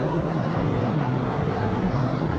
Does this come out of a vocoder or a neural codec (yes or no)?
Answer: yes